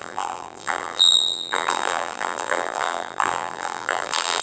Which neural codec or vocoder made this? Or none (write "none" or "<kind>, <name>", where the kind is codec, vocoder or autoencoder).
vocoder, BigVGAN v2